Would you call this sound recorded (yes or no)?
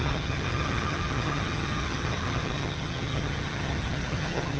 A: no